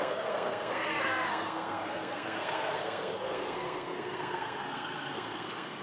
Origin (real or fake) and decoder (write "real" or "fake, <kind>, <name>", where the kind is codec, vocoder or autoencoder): fake, codec, SNAC